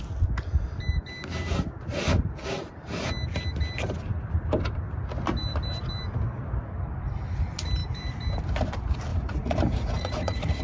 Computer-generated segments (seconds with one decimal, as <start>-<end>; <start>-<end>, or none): 9.1-10.6